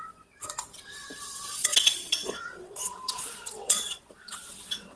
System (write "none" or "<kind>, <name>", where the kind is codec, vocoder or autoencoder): vocoder, WaveNeXt